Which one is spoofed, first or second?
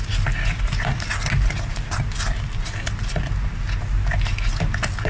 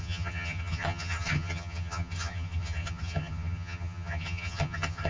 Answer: second